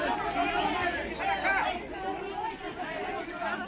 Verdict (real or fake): real